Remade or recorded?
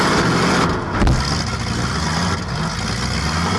recorded